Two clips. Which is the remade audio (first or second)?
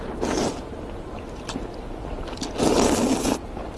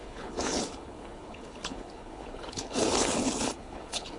second